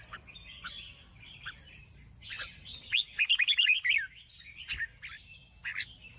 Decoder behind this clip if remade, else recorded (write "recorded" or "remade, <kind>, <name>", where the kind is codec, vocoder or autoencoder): recorded